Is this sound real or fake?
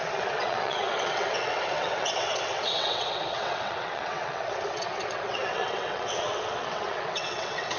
fake